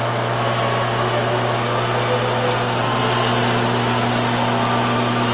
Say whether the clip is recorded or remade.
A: recorded